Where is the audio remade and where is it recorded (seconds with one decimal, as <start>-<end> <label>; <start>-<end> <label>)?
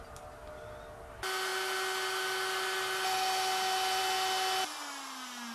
0.0-5.5 recorded